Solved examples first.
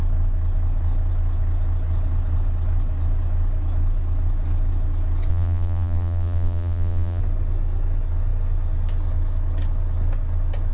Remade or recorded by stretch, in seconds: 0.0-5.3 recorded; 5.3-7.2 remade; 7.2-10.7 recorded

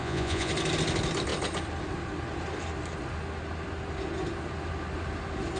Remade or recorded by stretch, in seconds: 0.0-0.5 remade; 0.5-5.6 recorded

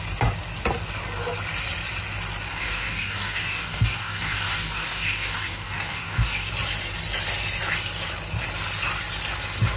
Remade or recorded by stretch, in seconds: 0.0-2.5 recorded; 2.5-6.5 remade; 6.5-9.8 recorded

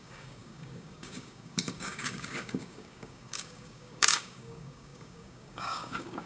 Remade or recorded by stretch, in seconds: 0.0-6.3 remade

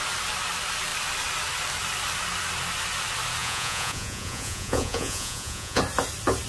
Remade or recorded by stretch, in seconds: 0.0-3.4 recorded; 3.4-5.8 remade; 5.8-6.5 recorded